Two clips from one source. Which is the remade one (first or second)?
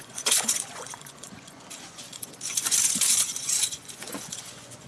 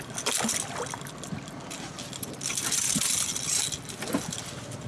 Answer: first